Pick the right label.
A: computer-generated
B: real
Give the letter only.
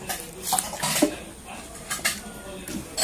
B